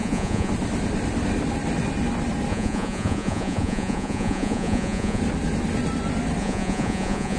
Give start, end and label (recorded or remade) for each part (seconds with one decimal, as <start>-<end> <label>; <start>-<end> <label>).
0.0-0.5 remade; 0.5-2.5 recorded; 2.5-5.2 remade; 5.2-6.4 recorded; 6.4-7.4 remade